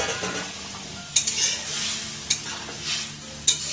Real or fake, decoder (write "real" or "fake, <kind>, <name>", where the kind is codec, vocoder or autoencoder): real